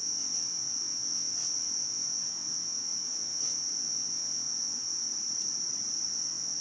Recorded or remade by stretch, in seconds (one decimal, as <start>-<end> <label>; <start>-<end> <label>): 0.0-5.1 remade; 5.1-6.1 recorded; 6.1-6.6 remade